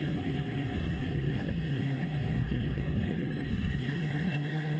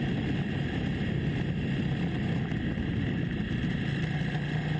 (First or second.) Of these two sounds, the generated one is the first